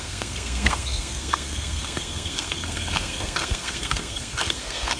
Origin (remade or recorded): remade